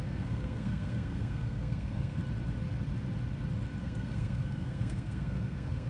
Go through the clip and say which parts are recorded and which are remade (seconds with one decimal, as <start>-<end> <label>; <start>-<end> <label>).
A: 0.0-2.2 remade; 2.2-3.8 recorded; 3.8-5.9 remade

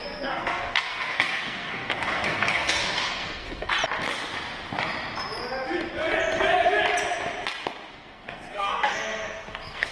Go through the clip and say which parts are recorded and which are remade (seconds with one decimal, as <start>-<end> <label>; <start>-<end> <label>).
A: 0.0-3.7 remade; 3.7-7.9 recorded; 7.9-9.9 remade

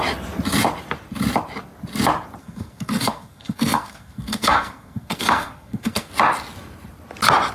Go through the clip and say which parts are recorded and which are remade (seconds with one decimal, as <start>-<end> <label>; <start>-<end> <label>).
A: 0.0-2.4 recorded; 2.4-6.1 remade; 6.1-7.5 recorded

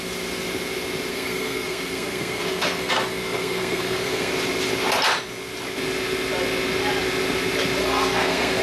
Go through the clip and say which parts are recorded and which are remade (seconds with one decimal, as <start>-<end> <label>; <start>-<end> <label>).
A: 0.0-1.1 recorded; 1.1-4.3 remade; 4.3-7.8 recorded; 7.8-8.6 remade

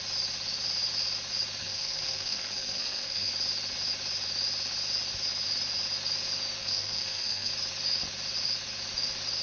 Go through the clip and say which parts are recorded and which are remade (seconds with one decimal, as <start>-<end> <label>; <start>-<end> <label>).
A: 0.0-1.6 recorded; 1.6-3.3 remade; 3.3-6.6 recorded; 6.6-7.5 remade; 7.5-9.4 recorded

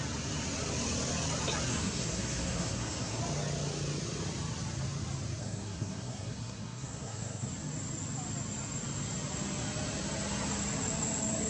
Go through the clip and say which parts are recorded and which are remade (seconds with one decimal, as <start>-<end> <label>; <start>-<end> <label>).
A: 0.0-1.7 recorded; 1.7-3.2 remade; 3.2-5.4 recorded; 5.4-7.5 remade; 7.5-11.5 recorded

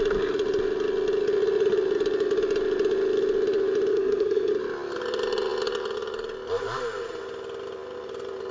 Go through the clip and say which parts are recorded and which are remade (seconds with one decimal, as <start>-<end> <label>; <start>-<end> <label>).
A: 0.0-3.9 recorded; 3.9-4.5 remade; 4.5-8.5 recorded

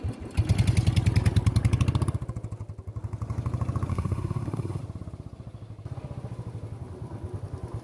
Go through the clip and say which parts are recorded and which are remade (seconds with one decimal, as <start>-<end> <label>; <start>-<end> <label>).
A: 0.0-3.9 recorded; 3.9-4.8 remade; 4.8-7.8 recorded